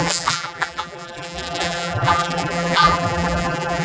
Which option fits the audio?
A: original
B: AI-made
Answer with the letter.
B